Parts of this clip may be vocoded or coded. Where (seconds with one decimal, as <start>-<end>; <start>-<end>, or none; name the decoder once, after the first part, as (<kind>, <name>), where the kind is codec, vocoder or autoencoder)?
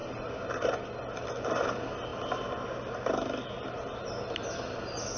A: none